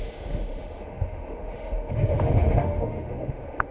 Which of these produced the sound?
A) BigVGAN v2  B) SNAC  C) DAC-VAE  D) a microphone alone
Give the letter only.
C